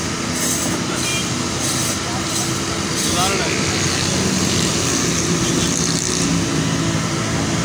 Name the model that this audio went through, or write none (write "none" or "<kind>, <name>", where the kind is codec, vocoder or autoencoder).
none